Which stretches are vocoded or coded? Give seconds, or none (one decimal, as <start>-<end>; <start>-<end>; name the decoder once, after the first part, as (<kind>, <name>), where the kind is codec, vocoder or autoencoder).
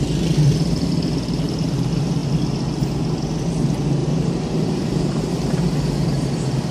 4.0-5.6 (vocoder, BigVGAN v2)